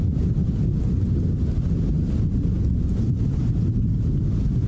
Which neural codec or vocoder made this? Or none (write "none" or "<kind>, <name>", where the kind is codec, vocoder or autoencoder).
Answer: none